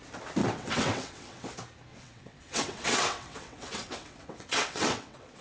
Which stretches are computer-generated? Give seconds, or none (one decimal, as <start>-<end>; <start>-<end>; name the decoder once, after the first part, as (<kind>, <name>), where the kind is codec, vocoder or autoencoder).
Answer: 0.4-1.4 (vocoder, WaveNeXt); 1.9-5.4